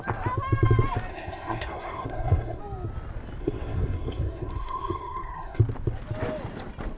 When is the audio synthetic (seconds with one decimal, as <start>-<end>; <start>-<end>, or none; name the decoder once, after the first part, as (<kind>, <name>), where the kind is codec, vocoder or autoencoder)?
1.1-2.6 (codec, SNAC); 3.4-5.6